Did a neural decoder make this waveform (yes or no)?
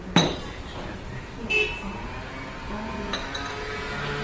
no